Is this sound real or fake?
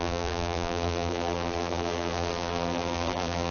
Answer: fake